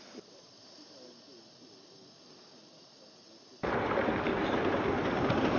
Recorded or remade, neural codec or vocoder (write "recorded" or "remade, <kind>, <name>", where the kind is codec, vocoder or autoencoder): remade, vocoder, BigVGAN v2